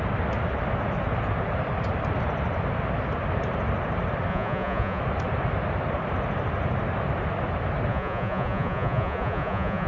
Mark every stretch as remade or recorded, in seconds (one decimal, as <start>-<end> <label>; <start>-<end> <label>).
0.0-4.3 recorded; 4.3-5.0 remade; 5.0-7.9 recorded; 7.9-9.9 remade